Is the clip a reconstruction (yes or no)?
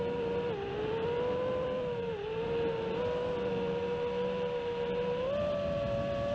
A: no